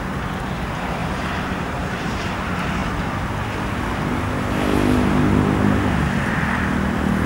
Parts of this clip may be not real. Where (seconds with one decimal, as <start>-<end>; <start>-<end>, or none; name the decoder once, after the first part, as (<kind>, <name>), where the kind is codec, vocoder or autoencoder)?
1.0-2.3 (vocoder, BigVGAN v2)